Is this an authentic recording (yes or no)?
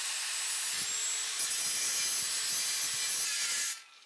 yes